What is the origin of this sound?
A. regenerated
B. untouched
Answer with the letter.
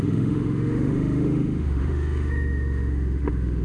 A